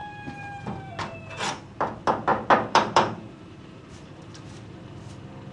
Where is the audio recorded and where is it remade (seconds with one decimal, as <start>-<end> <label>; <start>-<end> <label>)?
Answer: 0.0-0.6 remade; 0.6-2.3 recorded; 2.3-4.9 remade; 4.9-5.5 recorded